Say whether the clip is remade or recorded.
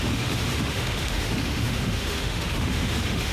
remade